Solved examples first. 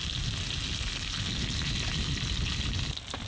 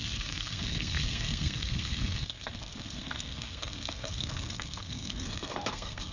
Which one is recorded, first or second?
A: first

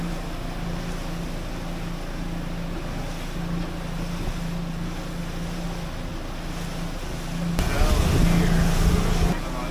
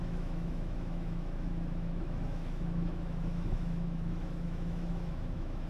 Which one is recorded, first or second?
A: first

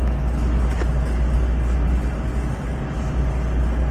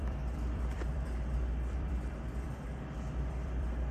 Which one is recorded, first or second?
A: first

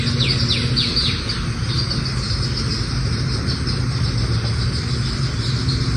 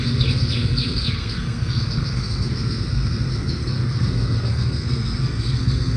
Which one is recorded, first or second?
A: first